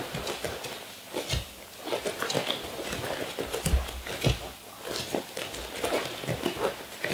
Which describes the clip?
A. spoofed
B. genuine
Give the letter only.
B